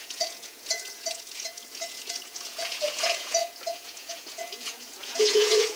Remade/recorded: remade